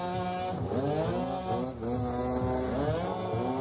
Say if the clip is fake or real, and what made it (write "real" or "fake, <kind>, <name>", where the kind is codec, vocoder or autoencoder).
real